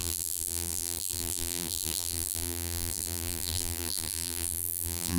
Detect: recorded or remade remade